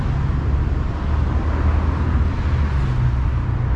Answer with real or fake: real